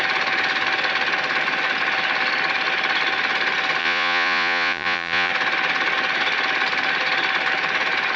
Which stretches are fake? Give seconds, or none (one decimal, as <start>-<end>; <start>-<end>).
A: 3.8-5.3